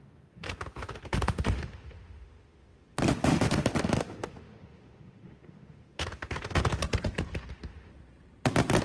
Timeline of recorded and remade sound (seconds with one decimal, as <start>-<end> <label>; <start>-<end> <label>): 0.0-6.8 remade; 6.8-7.5 recorded; 7.5-7.9 remade; 7.9-8.8 recorded